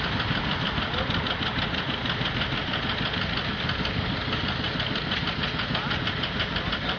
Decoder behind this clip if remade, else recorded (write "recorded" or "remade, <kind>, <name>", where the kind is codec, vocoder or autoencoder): recorded